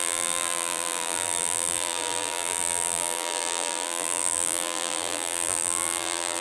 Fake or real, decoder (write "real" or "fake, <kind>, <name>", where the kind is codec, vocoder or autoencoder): fake, vocoder, BigVGAN v2